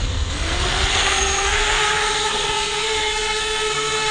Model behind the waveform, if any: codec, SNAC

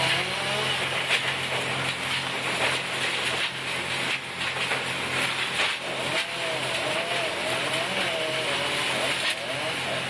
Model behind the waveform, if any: none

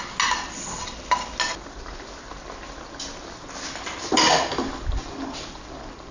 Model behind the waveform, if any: none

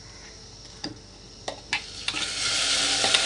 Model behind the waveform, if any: none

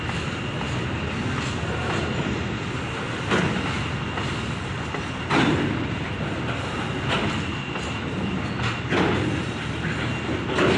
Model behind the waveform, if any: none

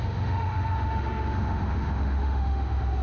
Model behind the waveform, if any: autoencoder, DAC-VAE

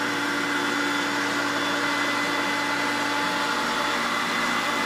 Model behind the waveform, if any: none